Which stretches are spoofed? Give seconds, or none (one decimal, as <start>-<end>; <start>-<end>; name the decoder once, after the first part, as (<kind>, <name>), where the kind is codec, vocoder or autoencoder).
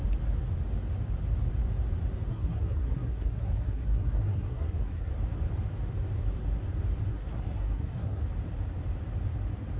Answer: 2.3-5.1 (codec, SNAC); 7.1-8.2